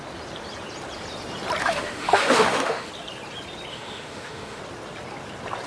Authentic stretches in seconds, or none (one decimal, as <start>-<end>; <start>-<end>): 0.0-1.6; 2.9-3.7; 4.6-5.7

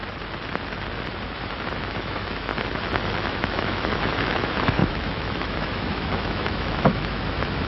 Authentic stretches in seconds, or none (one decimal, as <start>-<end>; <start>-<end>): 0.0-1.8; 2.5-3.1

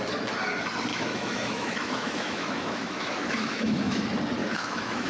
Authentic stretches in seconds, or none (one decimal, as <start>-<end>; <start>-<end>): 0.0-0.9; 4.0-4.4

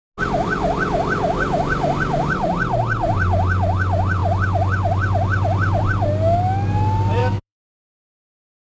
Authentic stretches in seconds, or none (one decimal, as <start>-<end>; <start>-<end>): 0.0-7.2; 7.7-8.6

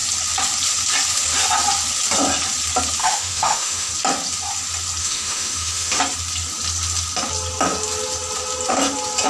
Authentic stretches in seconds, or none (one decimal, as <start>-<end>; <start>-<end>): 0.0-3.0; 3.9-5.0; 6.0-9.3